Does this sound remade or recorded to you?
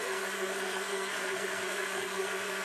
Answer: remade